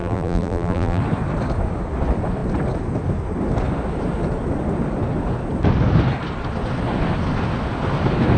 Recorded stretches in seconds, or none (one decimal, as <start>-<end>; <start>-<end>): 1.0-8.4